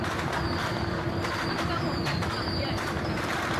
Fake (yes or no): yes